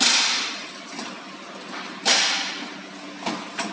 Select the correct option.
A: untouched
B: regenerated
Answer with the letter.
A